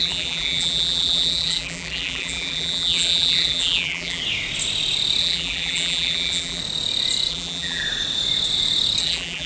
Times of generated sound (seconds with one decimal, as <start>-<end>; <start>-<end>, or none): 0.0-4.2; 5.2-6.6; 7.3-7.8; 9.0-9.5